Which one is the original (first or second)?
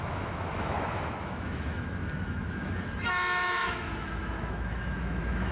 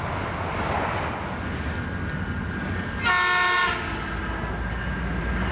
second